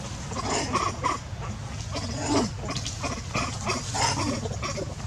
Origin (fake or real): real